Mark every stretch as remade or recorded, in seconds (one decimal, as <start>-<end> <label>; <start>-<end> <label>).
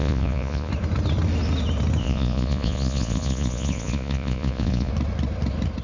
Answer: 0.0-0.7 remade; 0.7-2.0 recorded; 2.0-4.9 remade; 4.9-5.8 recorded